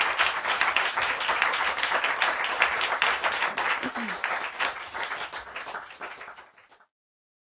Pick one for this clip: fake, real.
real